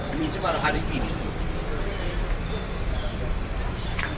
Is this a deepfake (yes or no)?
yes